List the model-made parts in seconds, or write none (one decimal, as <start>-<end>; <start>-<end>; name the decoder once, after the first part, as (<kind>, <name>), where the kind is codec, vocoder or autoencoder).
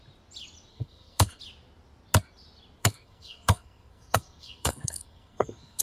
0.7-1.4 (codec, SNAC); 2.8-5.8